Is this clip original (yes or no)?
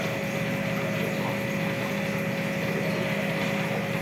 yes